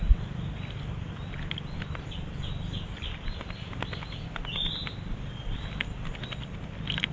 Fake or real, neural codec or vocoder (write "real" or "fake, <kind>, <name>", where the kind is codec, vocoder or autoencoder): real